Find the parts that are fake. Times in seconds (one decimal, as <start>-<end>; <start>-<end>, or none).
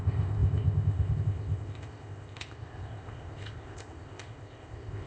0.0-5.1